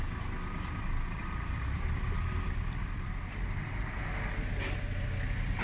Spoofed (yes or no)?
no